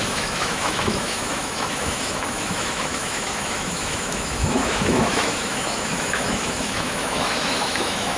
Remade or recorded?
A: remade